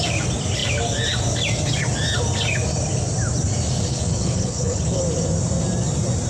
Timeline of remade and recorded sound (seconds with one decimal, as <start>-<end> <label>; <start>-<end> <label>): 0.0-3.9 recorded; 3.9-5.0 remade; 5.0-6.3 recorded